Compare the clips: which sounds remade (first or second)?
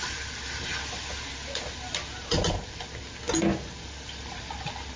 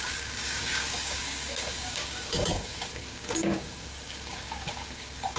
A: second